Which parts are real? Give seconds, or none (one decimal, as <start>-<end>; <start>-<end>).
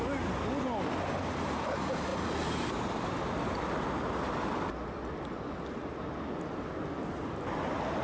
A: 0.0-8.0